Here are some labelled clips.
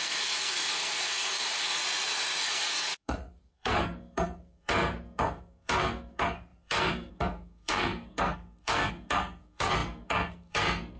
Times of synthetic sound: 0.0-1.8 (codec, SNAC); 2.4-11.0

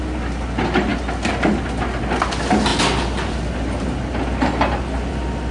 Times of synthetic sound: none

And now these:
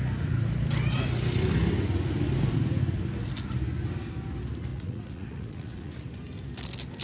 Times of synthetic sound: 4.7-5.9 (vocoder, Vocos)